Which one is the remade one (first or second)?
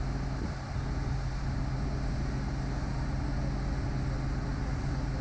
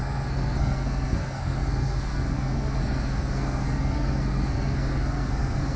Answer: second